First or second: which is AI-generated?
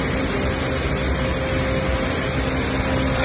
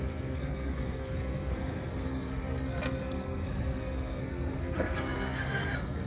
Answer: second